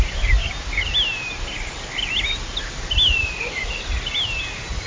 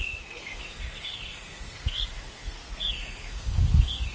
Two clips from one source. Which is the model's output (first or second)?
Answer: second